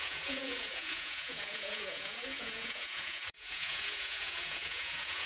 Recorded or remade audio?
remade